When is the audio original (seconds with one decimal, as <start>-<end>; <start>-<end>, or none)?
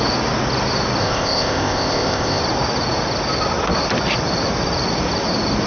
0.0-1.0; 2.4-5.7